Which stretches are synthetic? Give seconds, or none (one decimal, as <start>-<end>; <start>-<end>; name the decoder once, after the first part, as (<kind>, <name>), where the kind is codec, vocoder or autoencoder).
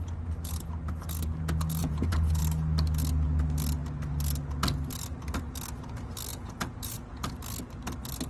1.8-2.4 (vocoder, Vocos); 6.3-7.3